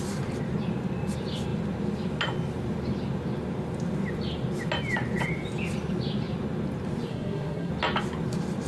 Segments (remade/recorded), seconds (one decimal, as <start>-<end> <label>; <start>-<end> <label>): 0.0-7.1 recorded; 7.1-7.7 remade; 7.7-8.7 recorded